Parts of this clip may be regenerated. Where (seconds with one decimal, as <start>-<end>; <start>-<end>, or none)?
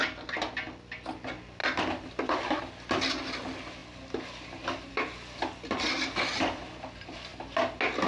none